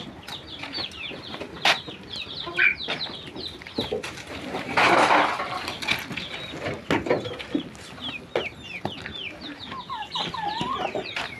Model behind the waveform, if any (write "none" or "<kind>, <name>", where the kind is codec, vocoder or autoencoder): none